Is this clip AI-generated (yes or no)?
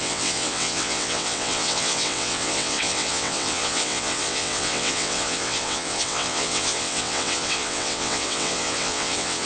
yes